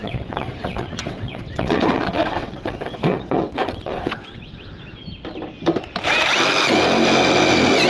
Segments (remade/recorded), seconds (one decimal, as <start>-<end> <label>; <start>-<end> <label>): 0.0-4.7 remade; 4.7-7.9 recorded